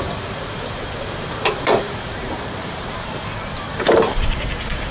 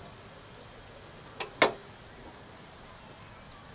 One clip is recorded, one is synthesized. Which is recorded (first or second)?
second